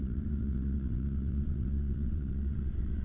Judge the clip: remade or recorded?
remade